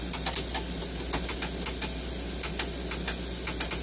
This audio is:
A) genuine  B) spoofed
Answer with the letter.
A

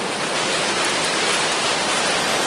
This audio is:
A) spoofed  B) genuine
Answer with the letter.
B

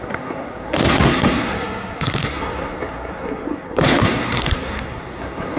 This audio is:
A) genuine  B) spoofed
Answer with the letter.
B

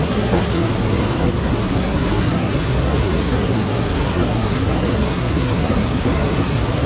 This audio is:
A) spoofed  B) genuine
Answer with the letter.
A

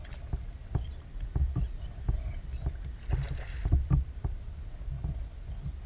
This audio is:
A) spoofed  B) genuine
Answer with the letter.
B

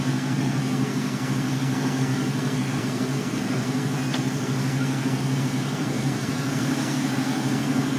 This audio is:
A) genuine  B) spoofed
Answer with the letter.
B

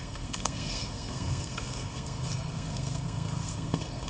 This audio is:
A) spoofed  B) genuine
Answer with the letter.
A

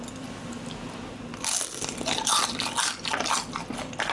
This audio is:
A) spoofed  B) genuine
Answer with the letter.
B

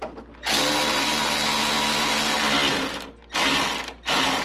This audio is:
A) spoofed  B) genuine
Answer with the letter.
B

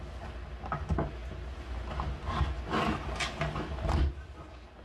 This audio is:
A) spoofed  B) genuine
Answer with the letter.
B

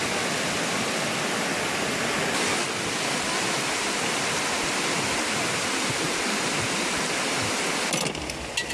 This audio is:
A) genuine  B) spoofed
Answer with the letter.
A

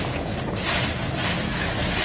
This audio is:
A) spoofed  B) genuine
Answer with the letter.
B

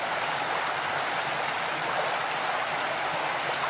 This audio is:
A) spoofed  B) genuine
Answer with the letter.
B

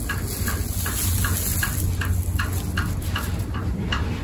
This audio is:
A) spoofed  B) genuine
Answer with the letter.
B